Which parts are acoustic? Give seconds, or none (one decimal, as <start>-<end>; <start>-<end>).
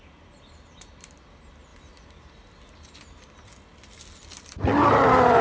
1.7-4.9